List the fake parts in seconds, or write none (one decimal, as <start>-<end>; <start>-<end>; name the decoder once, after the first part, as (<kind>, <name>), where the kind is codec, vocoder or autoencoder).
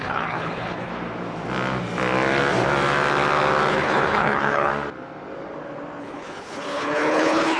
0.0-0.9 (codec, HILCodec); 3.7-4.7; 6.0-7.6